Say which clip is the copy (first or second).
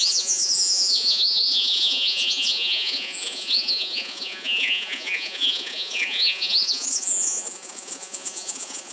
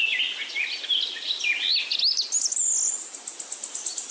first